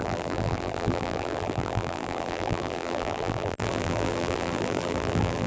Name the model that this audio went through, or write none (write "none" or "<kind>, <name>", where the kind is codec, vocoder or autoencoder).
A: vocoder, BigVGAN v2